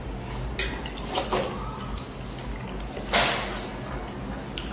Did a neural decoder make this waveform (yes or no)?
no